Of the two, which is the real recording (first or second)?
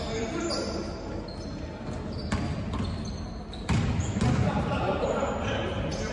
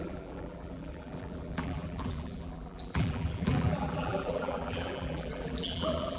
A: first